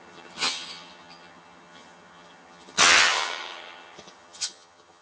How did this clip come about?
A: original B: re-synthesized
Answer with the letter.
B